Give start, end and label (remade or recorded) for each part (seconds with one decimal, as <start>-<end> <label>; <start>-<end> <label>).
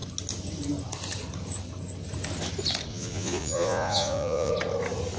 0.0-2.9 recorded; 2.9-4.5 remade; 4.5-5.2 recorded